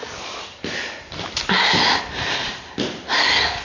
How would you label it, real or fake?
real